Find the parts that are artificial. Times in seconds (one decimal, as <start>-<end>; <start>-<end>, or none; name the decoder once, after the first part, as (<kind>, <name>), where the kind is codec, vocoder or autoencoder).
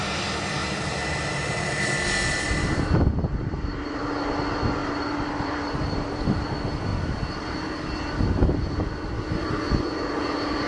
0.6-1.9 (vocoder, BigVGAN v2); 3.3-4.0; 4.8-6.5